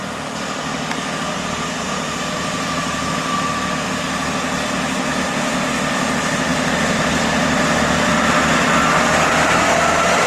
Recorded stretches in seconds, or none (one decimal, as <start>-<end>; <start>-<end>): 0.0-10.3